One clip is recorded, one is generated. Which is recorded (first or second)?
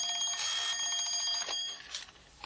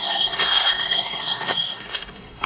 first